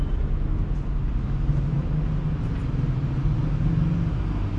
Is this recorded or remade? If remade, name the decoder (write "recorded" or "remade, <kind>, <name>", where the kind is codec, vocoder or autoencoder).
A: recorded